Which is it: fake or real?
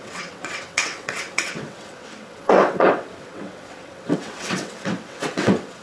fake